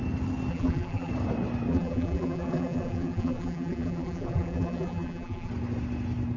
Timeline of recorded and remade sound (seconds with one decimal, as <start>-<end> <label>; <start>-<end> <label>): 0.0-0.5 recorded; 0.5-1.1 remade; 1.1-1.7 recorded; 1.7-5.5 remade; 5.5-6.4 recorded